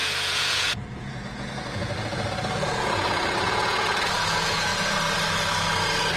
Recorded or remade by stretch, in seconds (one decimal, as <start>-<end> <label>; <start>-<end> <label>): 0.0-4.7 remade; 4.7-6.2 recorded

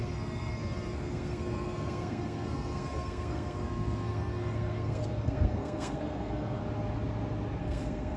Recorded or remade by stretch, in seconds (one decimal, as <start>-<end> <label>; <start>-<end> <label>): 0.0-6.6 remade; 6.6-7.6 recorded; 7.6-8.2 remade